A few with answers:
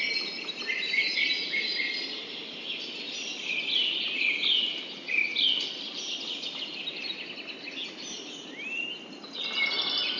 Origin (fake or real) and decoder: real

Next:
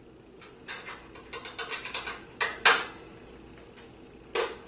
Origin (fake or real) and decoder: real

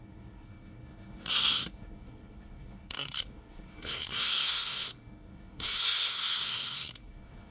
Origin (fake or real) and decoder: fake, codec, SNAC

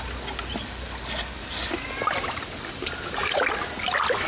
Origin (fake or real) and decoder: real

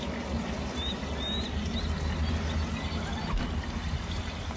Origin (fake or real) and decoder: real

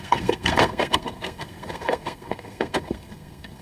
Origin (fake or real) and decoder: fake, codec, SNAC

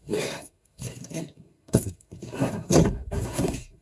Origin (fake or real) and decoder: fake, codec, SNAC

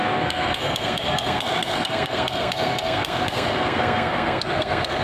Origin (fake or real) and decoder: fake, codec, SNAC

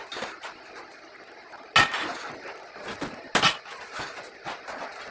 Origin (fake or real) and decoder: real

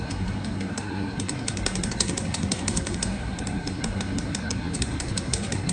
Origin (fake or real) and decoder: fake, codec, SNAC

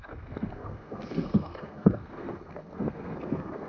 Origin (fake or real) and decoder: fake, codec, SNAC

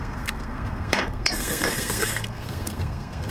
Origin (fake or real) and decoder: fake, codec, SNAC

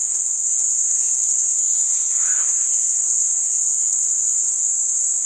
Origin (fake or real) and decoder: fake, codec, SNAC